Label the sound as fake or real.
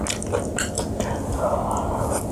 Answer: real